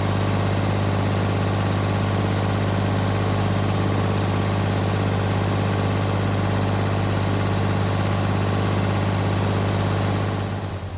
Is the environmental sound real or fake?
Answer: real